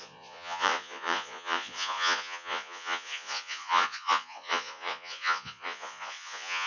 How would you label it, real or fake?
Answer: fake